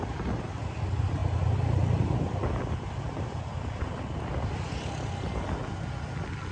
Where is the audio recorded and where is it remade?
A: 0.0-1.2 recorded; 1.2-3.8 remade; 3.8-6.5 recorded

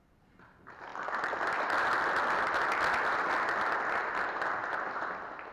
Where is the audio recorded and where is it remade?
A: 0.0-5.5 recorded

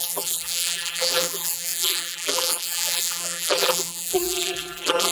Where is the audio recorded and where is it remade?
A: 0.0-5.1 remade

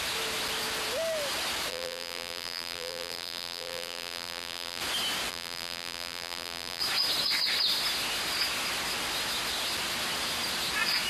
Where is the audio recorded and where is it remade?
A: 0.0-1.7 recorded; 1.7-4.8 remade; 4.8-5.3 recorded; 5.3-6.8 remade; 6.8-11.1 recorded

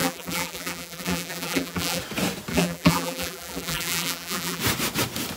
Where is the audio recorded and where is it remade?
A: 0.0-2.0 remade; 2.0-2.5 recorded; 2.5-4.6 remade; 4.6-5.4 recorded

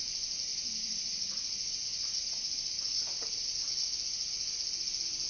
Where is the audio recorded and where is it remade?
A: 0.0-0.5 recorded; 0.5-3.7 remade; 3.7-5.3 recorded

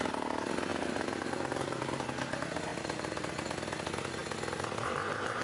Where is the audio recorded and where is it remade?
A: 0.0-0.7 recorded; 0.7-2.2 remade; 2.2-2.7 recorded; 2.7-3.3 remade; 3.3-5.4 recorded

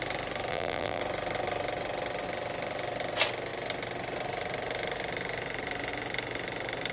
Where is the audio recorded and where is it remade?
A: 0.0-0.5 recorded; 0.5-1.0 remade; 1.0-6.9 recorded